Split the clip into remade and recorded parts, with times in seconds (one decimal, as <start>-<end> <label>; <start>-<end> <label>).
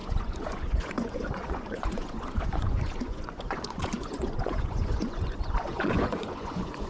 0.0-6.9 remade